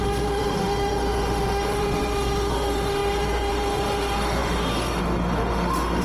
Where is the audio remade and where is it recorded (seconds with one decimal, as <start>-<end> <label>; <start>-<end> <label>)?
0.0-6.0 remade

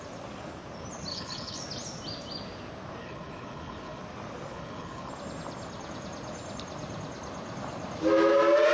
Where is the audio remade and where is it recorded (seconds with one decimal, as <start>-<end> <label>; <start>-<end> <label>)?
0.0-1.1 recorded; 1.1-1.6 remade; 1.6-3.0 recorded; 3.0-4.0 remade; 4.0-4.5 recorded; 4.5-5.1 remade; 5.1-8.7 recorded

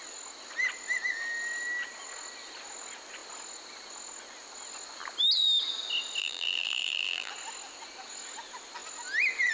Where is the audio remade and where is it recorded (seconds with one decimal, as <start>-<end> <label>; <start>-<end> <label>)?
0.0-6.2 recorded; 6.2-7.3 remade; 7.3-9.5 recorded

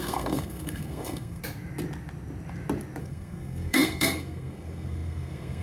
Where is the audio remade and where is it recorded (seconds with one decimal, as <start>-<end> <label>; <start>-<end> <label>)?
0.0-1.4 remade; 1.4-3.0 recorded; 3.0-5.6 remade

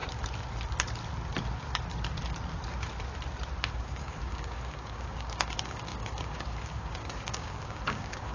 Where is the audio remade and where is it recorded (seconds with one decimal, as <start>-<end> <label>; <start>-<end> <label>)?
0.0-3.7 recorded; 3.7-8.3 remade